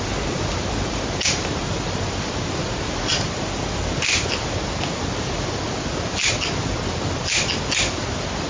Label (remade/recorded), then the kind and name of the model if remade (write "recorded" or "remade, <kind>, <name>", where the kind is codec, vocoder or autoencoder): recorded